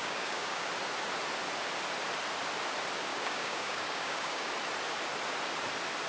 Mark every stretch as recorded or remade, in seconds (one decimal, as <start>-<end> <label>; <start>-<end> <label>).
0.0-0.7 remade; 0.7-3.1 recorded; 3.1-4.5 remade; 4.5-6.1 recorded